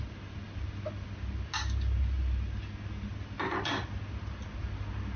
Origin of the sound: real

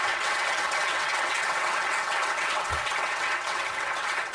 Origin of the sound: fake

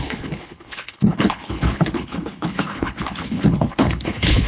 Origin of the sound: fake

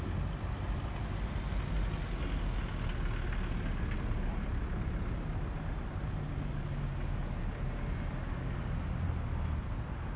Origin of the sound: real